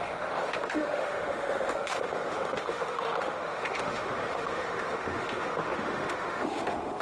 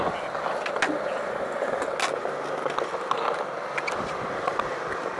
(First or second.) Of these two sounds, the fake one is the first